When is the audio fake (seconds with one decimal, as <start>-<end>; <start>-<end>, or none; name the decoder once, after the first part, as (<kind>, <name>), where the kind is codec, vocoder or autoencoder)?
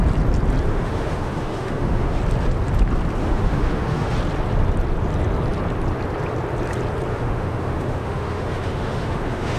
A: 0.7-2.2 (autoencoder, DAC-VAE); 3.2-4.2; 7.1-9.6